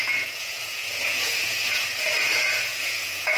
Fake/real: fake